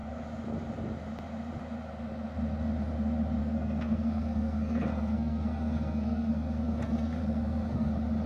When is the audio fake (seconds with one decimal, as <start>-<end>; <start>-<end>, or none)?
3.4-7.9